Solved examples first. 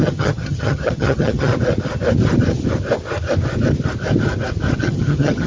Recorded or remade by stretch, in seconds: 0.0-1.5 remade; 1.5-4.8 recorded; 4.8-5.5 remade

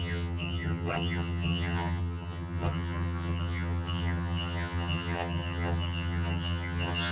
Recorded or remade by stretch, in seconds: 0.0-7.1 remade